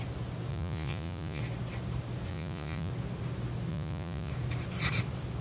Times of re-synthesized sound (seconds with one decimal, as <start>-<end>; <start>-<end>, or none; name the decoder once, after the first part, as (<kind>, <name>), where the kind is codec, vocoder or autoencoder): 0.5-1.4 (vocoder, Vocos); 2.3-2.9; 3.7-4.3